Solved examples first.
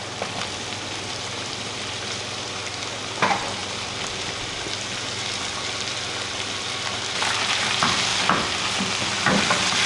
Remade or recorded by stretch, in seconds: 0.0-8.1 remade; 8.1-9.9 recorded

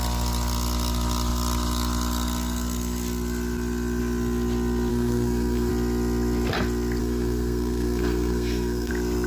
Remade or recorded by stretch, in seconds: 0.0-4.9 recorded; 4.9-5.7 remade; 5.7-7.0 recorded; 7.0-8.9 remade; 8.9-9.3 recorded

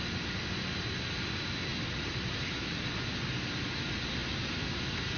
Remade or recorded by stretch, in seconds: 0.0-5.2 recorded